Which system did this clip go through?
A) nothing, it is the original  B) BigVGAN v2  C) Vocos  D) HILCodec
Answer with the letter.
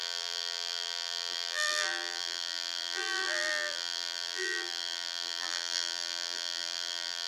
B